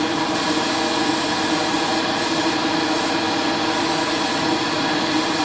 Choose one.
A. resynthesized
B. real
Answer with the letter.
B